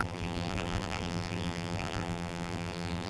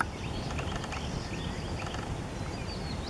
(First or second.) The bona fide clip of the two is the second